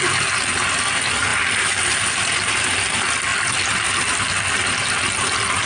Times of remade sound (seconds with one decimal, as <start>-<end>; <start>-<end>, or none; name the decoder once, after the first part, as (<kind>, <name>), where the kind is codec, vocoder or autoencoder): 1.3-1.8 (vocoder, BigVGAN v2); 3.3-5.7